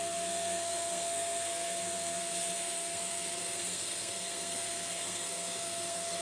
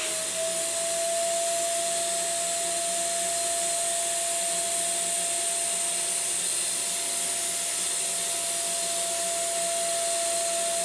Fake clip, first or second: first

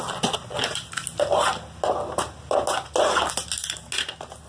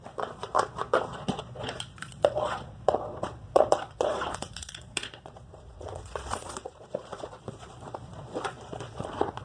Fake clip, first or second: second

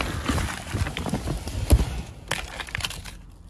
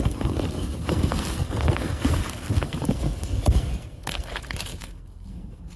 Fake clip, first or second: second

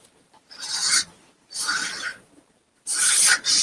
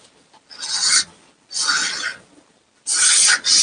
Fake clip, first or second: first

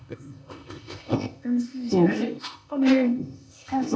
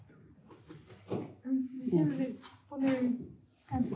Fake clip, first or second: first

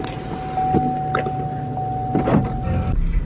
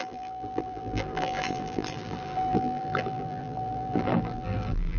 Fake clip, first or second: second